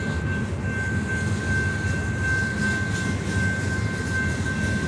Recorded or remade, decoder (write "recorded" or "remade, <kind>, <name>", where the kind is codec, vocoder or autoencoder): recorded